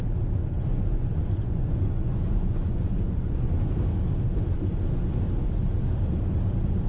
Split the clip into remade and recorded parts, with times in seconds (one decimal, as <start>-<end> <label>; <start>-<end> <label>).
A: 0.0-0.4 recorded; 0.4-3.5 remade; 3.5-6.9 recorded